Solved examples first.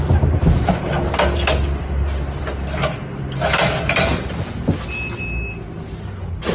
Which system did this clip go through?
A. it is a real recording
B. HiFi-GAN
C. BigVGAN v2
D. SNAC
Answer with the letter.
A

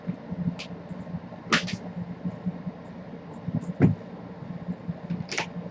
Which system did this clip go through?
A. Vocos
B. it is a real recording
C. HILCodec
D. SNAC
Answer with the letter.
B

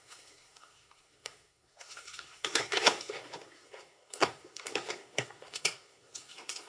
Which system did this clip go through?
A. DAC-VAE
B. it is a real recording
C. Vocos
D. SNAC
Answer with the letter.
D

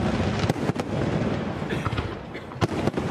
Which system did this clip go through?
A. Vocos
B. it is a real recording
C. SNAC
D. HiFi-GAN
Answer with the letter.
B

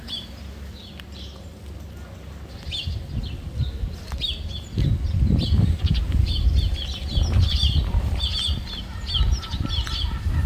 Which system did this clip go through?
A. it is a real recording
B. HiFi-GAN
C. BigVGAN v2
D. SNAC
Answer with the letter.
A